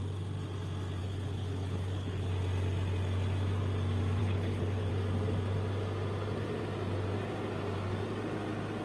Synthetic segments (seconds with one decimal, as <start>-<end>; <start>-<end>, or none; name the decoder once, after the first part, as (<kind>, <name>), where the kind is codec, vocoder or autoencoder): 1.0-2.3 (codec, HILCodec); 4.2-4.9